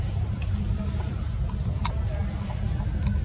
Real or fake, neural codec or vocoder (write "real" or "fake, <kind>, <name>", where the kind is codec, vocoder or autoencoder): real